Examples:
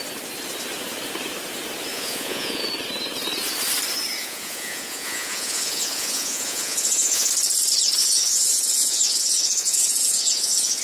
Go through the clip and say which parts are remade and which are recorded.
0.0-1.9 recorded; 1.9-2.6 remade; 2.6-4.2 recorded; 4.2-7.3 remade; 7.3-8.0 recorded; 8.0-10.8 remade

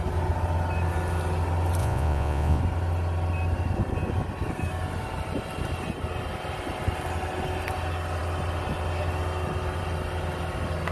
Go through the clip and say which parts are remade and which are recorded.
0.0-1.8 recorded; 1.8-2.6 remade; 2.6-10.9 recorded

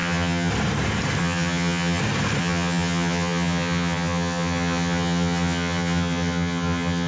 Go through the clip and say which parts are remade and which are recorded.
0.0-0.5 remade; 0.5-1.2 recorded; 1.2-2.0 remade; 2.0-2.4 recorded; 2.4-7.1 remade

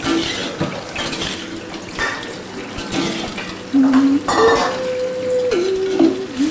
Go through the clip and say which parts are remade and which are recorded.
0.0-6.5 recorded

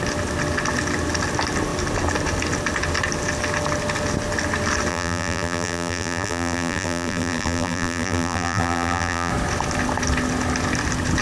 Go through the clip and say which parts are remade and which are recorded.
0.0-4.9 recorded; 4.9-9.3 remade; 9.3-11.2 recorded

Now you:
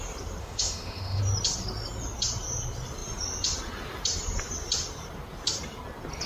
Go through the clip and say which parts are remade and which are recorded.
0.0-0.4 recorded; 0.4-1.2 remade; 1.2-6.3 recorded

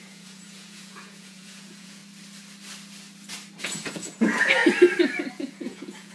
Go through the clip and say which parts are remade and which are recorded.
0.0-2.0 remade; 2.0-3.6 recorded; 3.6-4.6 remade; 4.6-5.3 recorded; 5.3-6.1 remade

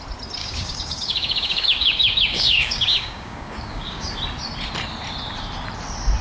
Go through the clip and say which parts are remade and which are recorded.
0.0-0.4 recorded; 0.4-4.1 remade; 4.1-6.2 recorded